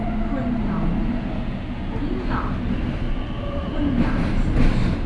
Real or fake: real